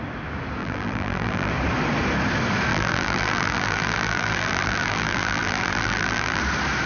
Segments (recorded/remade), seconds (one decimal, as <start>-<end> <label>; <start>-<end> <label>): 0.0-0.6 recorded; 0.6-1.5 remade; 1.5-2.7 recorded; 2.7-6.4 remade; 6.4-6.9 recorded